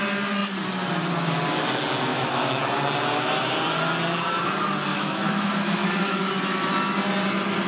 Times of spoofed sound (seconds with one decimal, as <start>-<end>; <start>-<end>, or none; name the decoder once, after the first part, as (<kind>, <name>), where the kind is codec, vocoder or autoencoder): 2.1-2.6 (autoencoder, DAC-VAE); 4.9-6.3

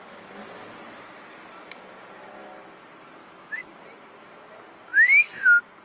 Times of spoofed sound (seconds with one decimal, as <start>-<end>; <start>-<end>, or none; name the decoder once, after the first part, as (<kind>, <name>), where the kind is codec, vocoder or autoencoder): 3.2-3.8 (autoencoder, DAC-VAE)

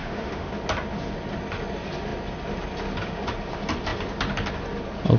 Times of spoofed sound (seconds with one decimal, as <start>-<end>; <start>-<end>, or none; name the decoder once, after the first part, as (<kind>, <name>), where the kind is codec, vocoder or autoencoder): 0.0-0.5 (autoencoder, DAC-VAE)

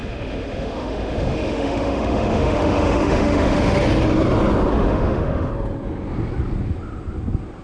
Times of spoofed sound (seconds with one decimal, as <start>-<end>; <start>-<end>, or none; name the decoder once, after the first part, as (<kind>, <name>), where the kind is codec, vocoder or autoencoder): 0.0-3.8 (autoencoder, DAC-VAE); 4.7-5.5

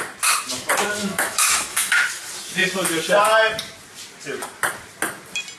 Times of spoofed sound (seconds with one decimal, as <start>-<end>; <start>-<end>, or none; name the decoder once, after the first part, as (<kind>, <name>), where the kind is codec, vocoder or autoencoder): 1.0-2.0 (autoencoder, DAC-VAE)

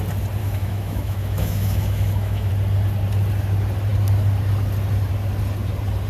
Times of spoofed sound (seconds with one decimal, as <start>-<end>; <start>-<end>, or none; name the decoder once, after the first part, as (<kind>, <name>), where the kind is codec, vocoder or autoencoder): 0.4-2.5 (autoencoder, DAC-VAE)